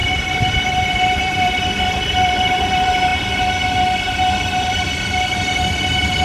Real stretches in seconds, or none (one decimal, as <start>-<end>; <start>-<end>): 3.1-4.1